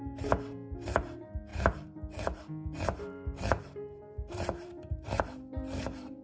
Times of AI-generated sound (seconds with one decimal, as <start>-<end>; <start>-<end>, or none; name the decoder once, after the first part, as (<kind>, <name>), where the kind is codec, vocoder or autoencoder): 0.0-6.2 (vocoder, BigVGAN v2)